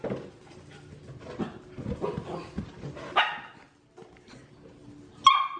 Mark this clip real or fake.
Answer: real